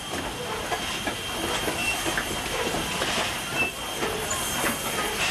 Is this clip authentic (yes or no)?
yes